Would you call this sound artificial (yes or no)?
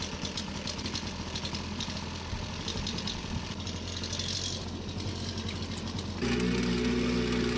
no